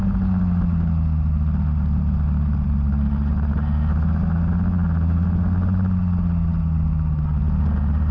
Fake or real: real